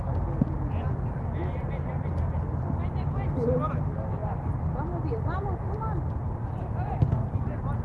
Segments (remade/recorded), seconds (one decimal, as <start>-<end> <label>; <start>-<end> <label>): 0.0-7.8 recorded